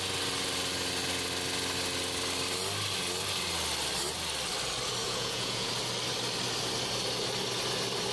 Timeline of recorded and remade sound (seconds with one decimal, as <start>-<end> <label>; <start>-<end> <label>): 0.0-5.0 recorded; 5.0-5.7 remade; 5.7-8.1 recorded